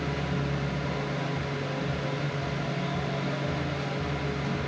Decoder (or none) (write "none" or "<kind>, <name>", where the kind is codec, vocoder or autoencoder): none